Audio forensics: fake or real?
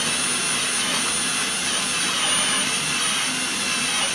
real